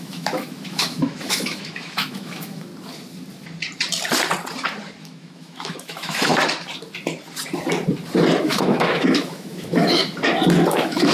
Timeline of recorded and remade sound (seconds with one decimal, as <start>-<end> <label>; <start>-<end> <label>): 0.0-2.7 remade; 2.7-5.0 recorded; 5.0-6.3 remade; 6.3-8.4 recorded; 8.4-10.0 remade; 10.0-10.7 recorded; 10.7-11.1 remade